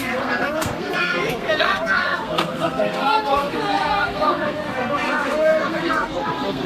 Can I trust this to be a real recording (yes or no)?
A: no